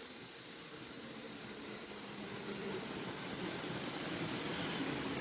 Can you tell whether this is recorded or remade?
remade